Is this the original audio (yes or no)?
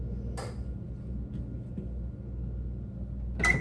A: yes